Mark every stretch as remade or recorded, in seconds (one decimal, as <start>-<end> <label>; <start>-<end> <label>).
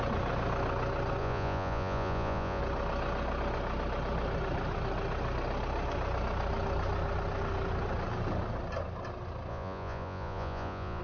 0.0-1.2 recorded; 1.2-2.6 remade; 2.6-9.5 recorded; 9.5-11.0 remade